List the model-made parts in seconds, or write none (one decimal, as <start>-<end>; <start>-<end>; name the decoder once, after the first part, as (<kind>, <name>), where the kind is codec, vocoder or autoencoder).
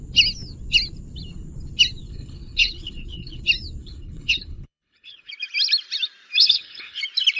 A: 2.1-3.4 (codec, HILCodec); 3.8-5.3; 6.4-7.0